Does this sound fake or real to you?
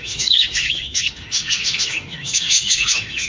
fake